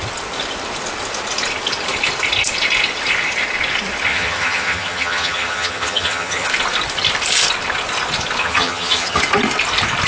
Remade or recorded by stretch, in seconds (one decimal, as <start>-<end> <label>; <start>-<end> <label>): 0.0-4.1 recorded; 4.1-6.5 remade; 6.5-8.4 recorded; 8.4-9.2 remade; 9.2-10.1 recorded